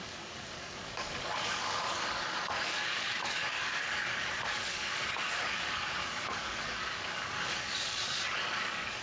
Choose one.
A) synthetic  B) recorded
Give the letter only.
A